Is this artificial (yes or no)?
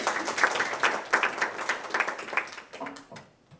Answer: no